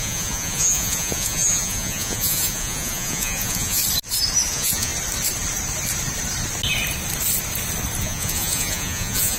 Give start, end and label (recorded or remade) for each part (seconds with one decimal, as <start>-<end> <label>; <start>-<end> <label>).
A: 0.0-3.8 remade; 3.8-4.5 recorded; 4.5-4.9 remade; 4.9-8.0 recorded; 8.0-9.4 remade